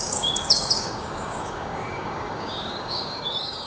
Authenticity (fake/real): fake